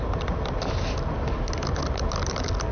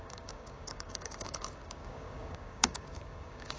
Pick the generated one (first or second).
second